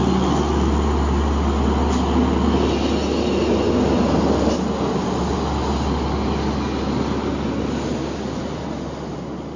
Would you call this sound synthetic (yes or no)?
no